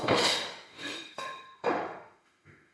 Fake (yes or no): yes